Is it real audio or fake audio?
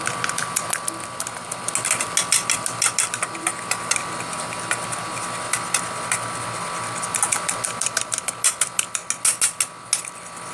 real